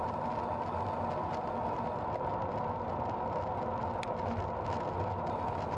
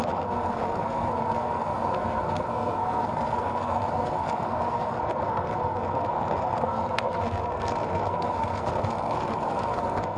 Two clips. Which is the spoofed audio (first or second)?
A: second